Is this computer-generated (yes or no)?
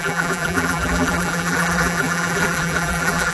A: yes